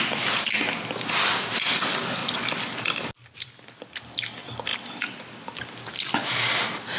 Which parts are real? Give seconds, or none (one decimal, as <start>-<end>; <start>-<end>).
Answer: 0.0-7.0